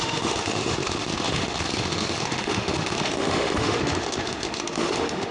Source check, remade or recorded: remade